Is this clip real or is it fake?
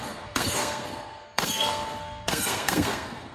fake